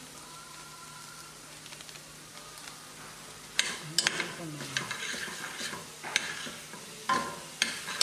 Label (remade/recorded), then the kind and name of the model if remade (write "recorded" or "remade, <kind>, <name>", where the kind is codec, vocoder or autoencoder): recorded